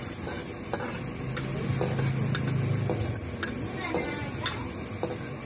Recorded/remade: recorded